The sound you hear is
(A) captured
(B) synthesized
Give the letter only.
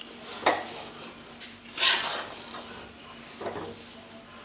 A